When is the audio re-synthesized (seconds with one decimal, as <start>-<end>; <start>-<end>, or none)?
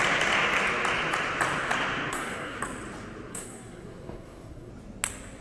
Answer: 2.1-2.6; 3.3-4.7